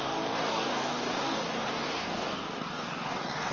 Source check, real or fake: fake